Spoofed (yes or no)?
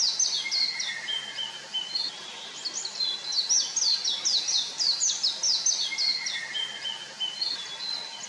no